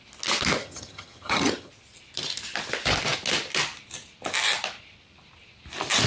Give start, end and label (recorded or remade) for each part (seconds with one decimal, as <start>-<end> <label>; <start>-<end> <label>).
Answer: 0.0-0.6 recorded; 0.6-1.7 remade; 1.7-6.1 recorded